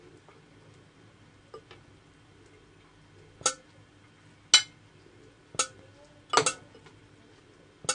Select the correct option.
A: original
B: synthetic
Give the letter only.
A